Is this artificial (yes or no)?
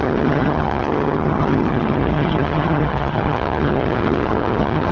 yes